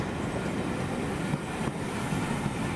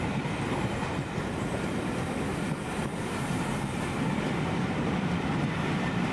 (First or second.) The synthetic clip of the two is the second